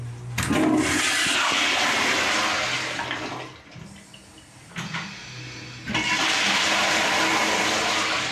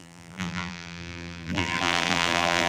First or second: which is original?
first